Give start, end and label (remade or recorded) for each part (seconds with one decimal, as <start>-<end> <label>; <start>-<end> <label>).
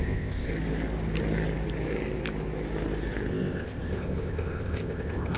0.0-0.5 remade; 0.5-3.3 recorded; 3.3-5.4 remade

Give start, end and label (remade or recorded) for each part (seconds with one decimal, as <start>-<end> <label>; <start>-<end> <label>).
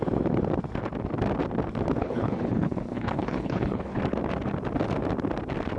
0.0-2.0 recorded; 2.0-4.0 remade; 4.0-5.8 recorded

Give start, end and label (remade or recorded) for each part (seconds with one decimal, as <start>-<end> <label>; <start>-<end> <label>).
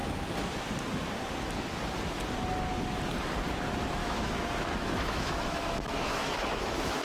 0.0-4.0 recorded; 4.0-7.0 remade